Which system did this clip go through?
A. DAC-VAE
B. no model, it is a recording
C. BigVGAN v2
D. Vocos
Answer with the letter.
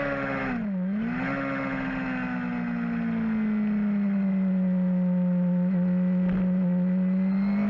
B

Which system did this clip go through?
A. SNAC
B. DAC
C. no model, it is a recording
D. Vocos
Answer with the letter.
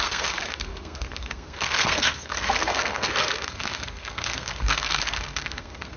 A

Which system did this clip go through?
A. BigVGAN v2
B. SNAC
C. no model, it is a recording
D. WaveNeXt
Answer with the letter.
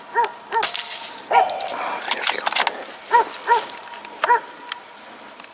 C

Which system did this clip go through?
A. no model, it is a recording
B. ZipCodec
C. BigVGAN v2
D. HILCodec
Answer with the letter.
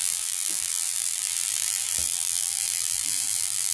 C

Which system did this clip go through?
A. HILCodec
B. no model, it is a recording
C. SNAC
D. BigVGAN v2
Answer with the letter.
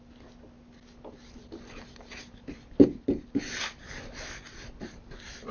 B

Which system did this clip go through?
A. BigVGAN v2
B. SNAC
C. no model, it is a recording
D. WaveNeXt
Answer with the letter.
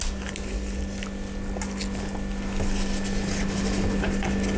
C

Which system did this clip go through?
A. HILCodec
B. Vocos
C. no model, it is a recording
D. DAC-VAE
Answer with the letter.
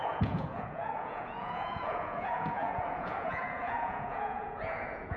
B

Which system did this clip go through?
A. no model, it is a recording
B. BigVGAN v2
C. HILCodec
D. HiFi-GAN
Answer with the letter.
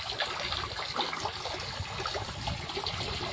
A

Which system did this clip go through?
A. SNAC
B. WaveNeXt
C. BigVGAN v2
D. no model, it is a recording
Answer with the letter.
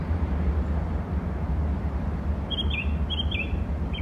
C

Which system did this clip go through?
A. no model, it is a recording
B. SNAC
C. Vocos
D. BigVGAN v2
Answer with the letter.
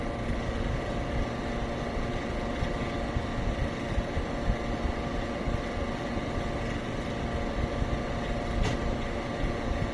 A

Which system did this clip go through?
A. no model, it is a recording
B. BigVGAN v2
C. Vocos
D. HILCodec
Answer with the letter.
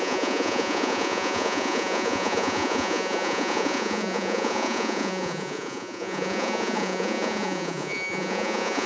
C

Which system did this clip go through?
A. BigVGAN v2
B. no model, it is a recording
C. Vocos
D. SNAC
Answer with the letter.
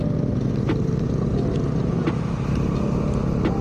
B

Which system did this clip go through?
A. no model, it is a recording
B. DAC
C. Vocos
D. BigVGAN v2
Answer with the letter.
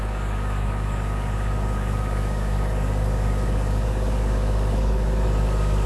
B